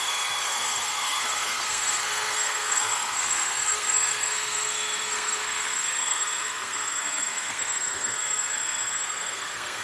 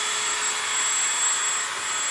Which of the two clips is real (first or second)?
second